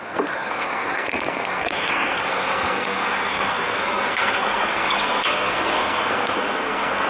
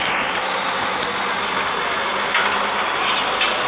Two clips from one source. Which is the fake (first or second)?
first